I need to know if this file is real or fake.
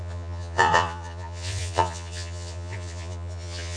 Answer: fake